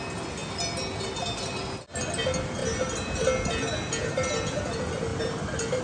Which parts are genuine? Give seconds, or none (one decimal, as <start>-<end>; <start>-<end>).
0.0-5.1